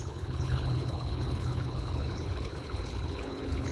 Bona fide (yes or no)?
no